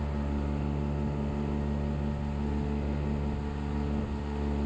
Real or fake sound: real